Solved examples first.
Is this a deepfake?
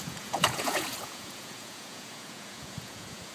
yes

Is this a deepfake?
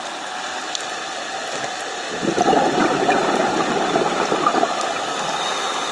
no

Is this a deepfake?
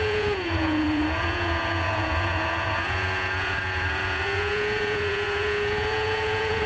yes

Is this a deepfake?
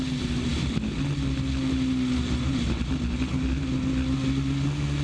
no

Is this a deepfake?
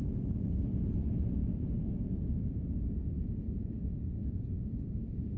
yes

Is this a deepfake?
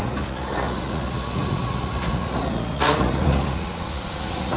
yes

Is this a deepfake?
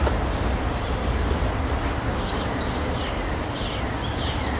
no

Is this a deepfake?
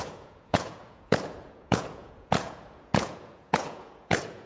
yes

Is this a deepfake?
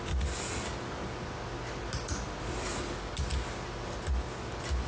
no